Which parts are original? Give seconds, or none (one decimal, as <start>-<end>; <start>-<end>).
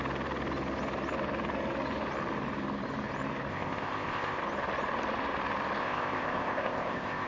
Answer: 0.0-3.5; 4.4-5.8